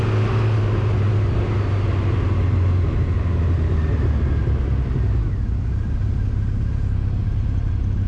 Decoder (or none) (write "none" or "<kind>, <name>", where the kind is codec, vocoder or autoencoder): none